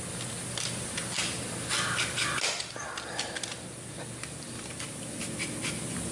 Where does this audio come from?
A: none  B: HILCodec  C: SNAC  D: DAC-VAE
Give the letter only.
A